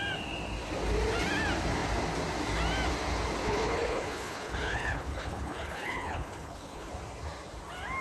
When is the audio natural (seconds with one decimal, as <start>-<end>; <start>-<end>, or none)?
0.0-3.4; 6.9-8.0